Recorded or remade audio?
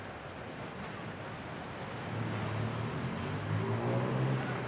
recorded